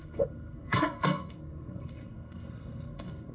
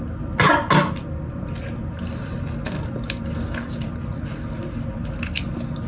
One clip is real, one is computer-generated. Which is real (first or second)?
second